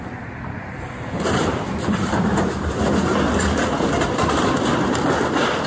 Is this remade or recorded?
remade